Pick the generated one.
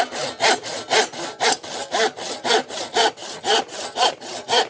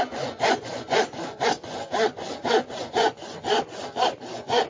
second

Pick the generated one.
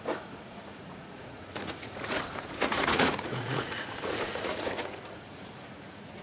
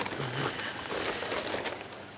first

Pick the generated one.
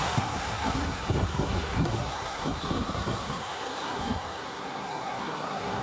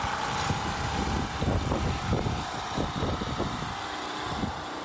first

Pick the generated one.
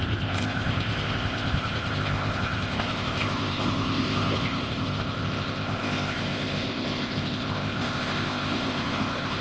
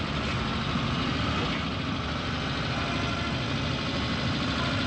first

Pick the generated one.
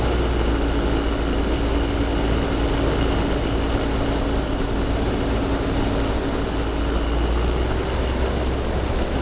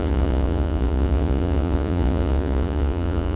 second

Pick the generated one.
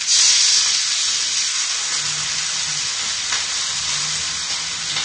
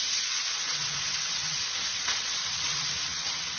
second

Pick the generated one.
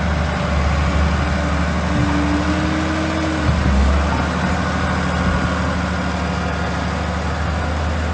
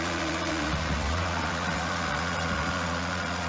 second